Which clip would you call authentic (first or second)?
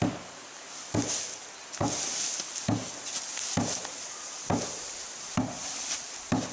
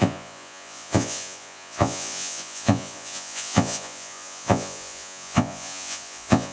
first